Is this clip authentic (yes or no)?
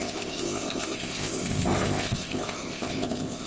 no